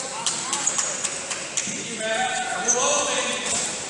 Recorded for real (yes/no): no